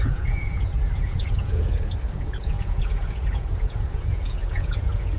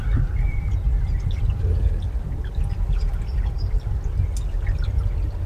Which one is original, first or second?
second